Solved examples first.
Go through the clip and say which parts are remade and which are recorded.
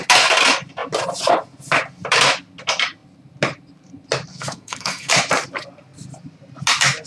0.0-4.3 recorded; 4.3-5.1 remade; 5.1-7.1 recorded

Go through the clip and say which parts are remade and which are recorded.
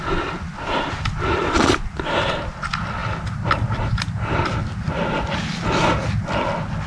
0.0-6.9 recorded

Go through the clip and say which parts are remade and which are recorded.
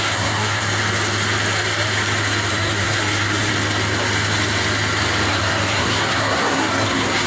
0.0-0.6 remade; 0.6-2.5 recorded; 2.5-3.5 remade; 3.5-5.3 recorded; 5.3-7.3 remade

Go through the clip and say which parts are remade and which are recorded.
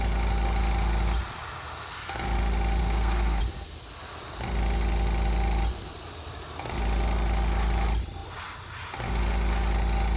0.0-2.8 recorded; 2.8-3.4 remade; 3.4-10.2 recorded